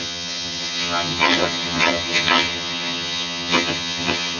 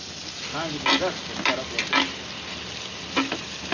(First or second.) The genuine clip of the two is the second